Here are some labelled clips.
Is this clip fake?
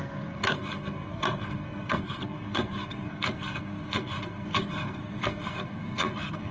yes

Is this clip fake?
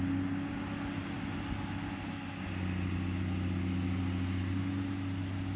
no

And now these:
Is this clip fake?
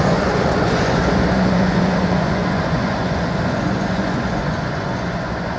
yes